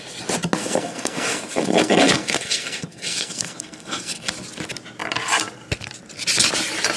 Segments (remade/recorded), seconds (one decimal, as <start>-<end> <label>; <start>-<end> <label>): 0.0-0.6 recorded; 0.6-4.3 remade; 4.3-7.0 recorded